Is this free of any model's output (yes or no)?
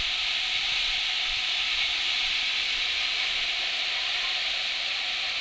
yes